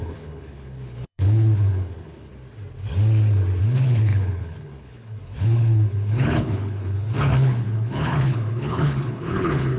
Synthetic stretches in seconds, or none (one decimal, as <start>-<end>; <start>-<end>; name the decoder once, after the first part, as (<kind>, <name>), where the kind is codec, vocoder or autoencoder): 0.0-2.3 (codec, HILCodec); 3.6-9.8